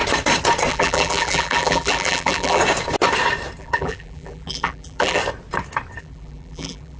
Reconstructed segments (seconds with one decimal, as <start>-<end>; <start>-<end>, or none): 0.7-2.6; 3.6-5.2; 6.0-7.0